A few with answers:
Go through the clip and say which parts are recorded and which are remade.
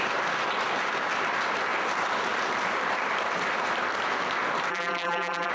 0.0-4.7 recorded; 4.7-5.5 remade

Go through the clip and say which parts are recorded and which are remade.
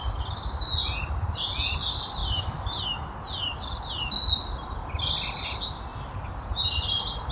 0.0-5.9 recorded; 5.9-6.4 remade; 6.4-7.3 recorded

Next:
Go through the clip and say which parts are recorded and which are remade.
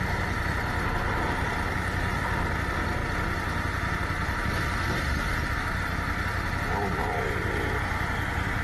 0.0-8.6 recorded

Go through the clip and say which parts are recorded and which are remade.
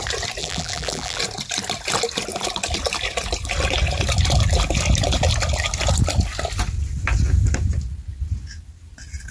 0.0-0.4 recorded; 0.4-1.2 remade; 1.2-9.3 recorded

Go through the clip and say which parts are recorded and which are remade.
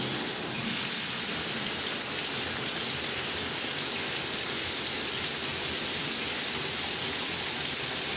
0.0-2.8 recorded; 2.8-3.7 remade; 3.7-8.2 recorded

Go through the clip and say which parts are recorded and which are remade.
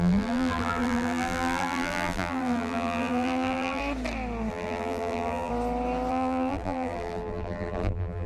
0.0-3.8 remade; 3.8-4.5 recorded; 4.5-5.5 remade; 5.5-6.1 recorded; 6.1-8.3 remade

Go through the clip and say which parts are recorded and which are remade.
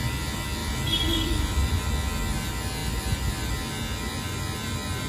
0.0-0.6 recorded; 0.6-1.9 remade; 1.9-2.8 recorded; 2.8-3.5 remade; 3.5-4.1 recorded; 4.1-5.1 remade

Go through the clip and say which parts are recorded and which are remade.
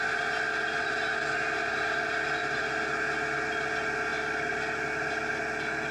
0.0-1.7 recorded; 1.7-2.6 remade; 2.6-4.1 recorded; 4.1-5.9 remade